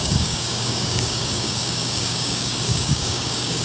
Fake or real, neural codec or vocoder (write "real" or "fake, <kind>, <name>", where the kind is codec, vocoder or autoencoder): fake, codec, DAC